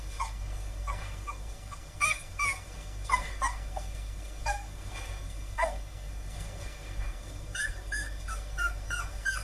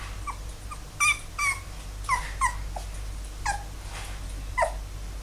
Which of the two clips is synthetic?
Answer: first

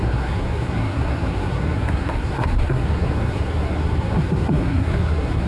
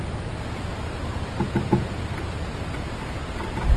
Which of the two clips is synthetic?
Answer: first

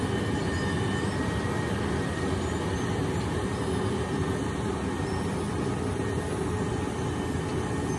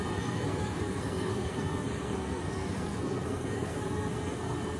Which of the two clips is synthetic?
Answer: second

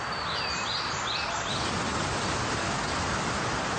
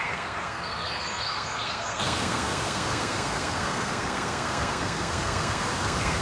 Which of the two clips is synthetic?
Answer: second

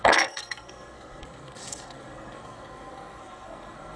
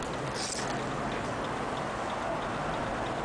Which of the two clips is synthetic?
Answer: first